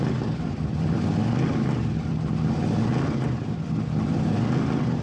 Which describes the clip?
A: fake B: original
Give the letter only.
B